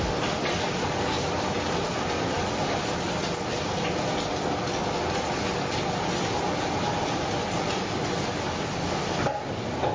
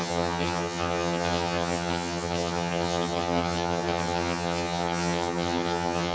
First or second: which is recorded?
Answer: first